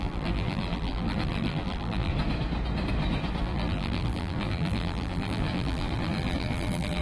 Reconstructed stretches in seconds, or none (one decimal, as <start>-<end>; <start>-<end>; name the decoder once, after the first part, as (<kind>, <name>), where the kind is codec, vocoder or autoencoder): 0.0-2.1 (vocoder, BigVGAN v2); 3.4-7.0